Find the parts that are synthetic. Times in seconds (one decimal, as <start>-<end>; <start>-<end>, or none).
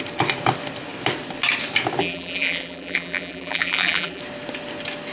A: 2.0-4.2